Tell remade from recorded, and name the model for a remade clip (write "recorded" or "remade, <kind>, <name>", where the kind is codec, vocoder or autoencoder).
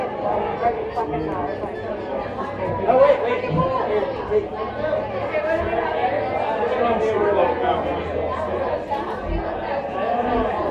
recorded